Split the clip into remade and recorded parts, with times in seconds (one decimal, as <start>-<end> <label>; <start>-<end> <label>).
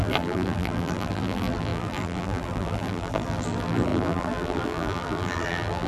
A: 0.0-5.9 remade